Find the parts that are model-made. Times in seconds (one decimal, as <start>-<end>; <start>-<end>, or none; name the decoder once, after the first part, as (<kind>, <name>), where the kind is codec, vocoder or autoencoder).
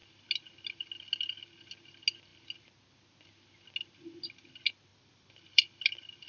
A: 4.9-6.3 (vocoder, BigVGAN v2)